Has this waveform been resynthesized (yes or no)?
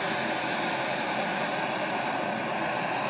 no